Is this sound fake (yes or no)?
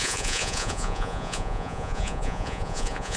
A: yes